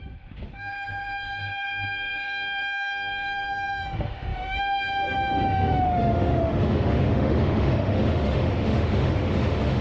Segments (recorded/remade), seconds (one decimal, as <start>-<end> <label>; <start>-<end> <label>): 0.0-9.8 remade